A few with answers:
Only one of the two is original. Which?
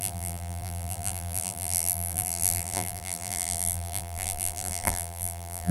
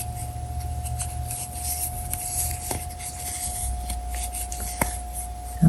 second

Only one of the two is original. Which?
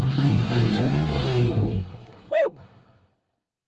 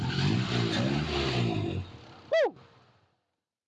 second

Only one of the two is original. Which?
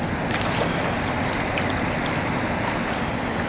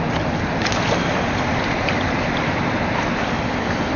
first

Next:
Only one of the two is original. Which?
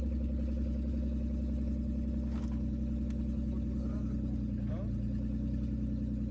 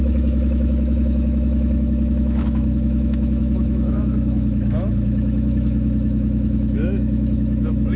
first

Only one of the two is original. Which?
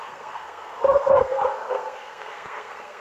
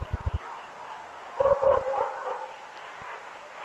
second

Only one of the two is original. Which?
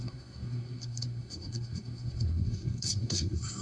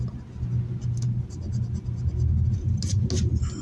second